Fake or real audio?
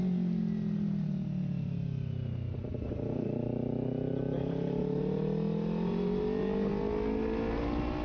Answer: real